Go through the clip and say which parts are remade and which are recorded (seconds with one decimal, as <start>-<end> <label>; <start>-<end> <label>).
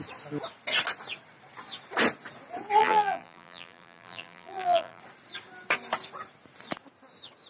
0.0-2.8 recorded; 2.8-5.0 remade; 5.0-7.5 recorded